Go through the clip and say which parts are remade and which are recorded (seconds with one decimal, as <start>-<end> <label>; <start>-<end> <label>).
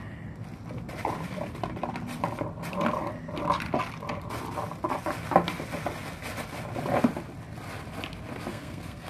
0.0-8.5 recorded; 8.5-9.1 remade